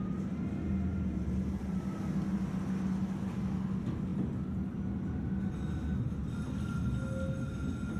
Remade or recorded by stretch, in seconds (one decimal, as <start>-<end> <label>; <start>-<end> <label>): 0.0-0.9 recorded; 0.9-1.8 remade; 1.8-8.0 recorded